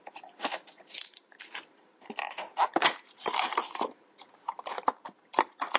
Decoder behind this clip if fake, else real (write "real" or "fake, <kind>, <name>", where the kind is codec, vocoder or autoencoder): fake, vocoder, BigVGAN v2